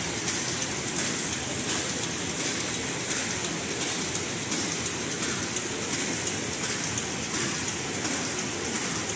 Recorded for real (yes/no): yes